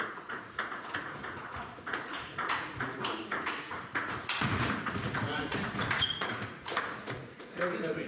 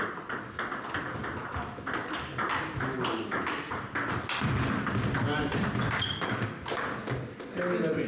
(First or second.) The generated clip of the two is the first